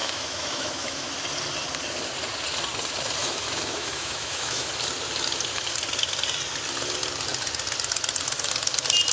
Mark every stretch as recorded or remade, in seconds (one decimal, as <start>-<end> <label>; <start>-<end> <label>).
0.0-1.1 remade; 1.1-3.2 recorded; 3.2-4.7 remade; 4.7-9.1 recorded